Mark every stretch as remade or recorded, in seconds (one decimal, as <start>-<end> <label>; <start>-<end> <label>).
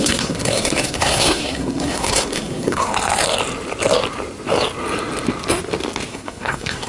0.0-2.9 remade; 2.9-6.1 recorded; 6.1-6.9 remade